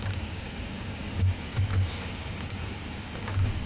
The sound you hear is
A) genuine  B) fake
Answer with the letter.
B